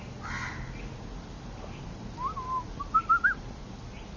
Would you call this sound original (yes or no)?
yes